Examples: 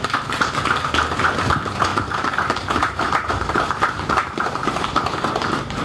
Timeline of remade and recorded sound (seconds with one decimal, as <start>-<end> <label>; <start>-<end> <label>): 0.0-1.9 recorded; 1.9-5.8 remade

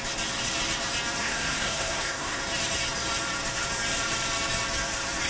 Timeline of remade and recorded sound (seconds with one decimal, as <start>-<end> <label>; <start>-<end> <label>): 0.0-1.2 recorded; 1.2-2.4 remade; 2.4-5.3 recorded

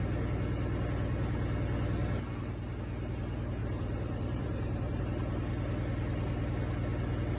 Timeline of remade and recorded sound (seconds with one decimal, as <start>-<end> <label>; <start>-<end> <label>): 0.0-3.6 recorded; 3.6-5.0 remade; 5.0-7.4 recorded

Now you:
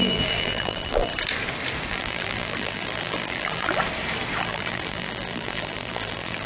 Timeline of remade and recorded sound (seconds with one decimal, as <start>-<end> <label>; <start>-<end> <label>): 0.0-1.1 remade; 1.1-1.9 recorded; 1.9-3.8 remade; 3.8-4.4 recorded; 4.4-6.5 remade

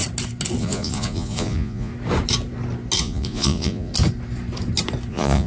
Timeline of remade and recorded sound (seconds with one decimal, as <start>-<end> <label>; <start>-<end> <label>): 0.0-0.6 recorded; 0.6-1.9 remade; 1.9-3.0 recorded; 3.0-3.9 remade; 3.9-5.1 recorded; 5.1-5.5 remade